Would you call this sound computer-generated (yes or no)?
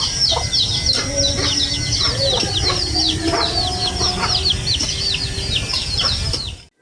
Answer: no